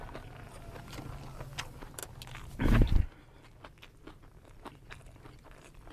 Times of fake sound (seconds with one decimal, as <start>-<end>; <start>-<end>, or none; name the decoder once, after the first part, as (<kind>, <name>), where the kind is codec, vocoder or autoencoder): 0.0-2.0 (vocoder, BigVGAN v2); 4.2-5.9